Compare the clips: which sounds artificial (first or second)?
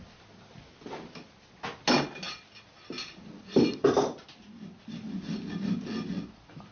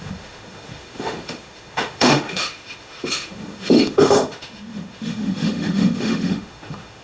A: second